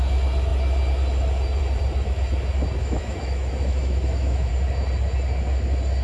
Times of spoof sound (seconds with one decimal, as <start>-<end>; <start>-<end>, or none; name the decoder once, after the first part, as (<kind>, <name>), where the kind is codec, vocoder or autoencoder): 2.8-4.5 (autoencoder, DAC-VAE)